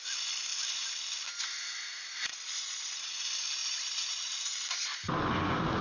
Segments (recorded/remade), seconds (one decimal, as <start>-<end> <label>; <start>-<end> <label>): 0.0-2.3 recorded; 2.3-3.2 remade; 3.2-3.6 recorded; 3.6-4.4 remade; 4.4-5.8 recorded